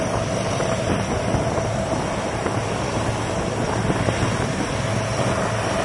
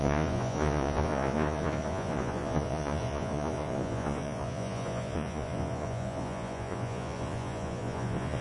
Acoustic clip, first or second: first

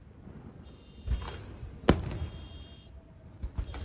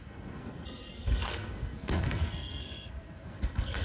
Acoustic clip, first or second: first